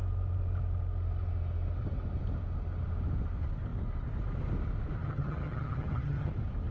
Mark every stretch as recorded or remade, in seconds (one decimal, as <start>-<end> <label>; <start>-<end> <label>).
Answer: 0.0-5.0 recorded; 5.0-6.3 remade; 6.3-6.7 recorded